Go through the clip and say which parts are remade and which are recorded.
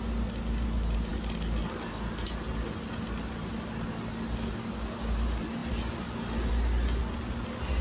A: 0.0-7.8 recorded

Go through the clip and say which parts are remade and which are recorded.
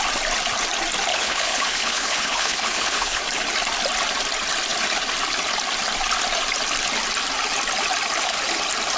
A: 0.0-1.1 recorded; 1.1-3.2 remade; 3.2-9.0 recorded